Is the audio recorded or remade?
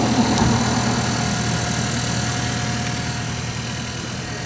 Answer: recorded